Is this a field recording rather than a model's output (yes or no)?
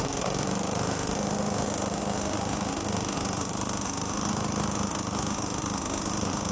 no